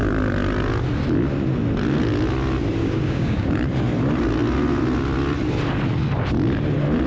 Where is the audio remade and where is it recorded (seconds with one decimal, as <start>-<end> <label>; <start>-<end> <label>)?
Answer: 0.0-2.8 recorded; 2.8-3.5 remade; 3.5-7.1 recorded